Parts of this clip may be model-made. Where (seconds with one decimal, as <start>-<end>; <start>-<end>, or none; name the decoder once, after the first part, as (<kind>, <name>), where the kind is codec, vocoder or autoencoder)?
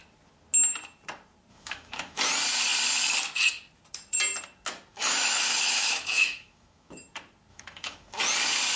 1.5-2.2 (autoencoder, DAC-VAE); 4.9-7.0; 7.5-8.2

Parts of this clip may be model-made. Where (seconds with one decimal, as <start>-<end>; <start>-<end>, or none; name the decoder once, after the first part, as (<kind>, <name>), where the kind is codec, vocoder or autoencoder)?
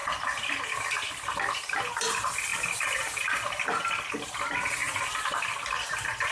0.0-0.6 (vocoder, BigVGAN v2)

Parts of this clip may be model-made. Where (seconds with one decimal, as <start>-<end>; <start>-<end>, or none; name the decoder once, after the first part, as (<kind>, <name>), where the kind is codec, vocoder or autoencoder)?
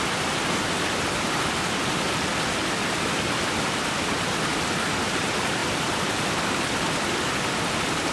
0.0-2.3 (vocoder, BigVGAN v2); 3.4-8.1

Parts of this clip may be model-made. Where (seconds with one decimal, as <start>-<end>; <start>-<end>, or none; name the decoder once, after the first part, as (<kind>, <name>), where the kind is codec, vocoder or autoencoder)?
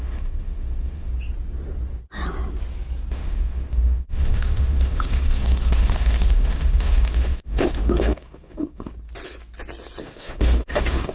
0.0-1.1 (autoencoder, DAC-VAE); 3.1-8.9; 10.0-11.1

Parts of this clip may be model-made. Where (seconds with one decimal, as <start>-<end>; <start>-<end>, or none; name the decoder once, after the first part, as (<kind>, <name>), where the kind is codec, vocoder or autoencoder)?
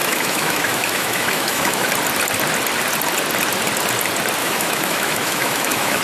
0.0-1.9 (autoencoder, DAC-VAE); 4.4-6.0